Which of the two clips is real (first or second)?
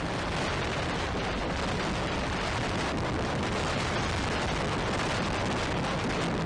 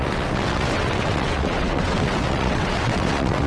first